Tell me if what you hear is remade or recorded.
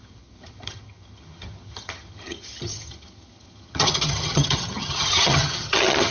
remade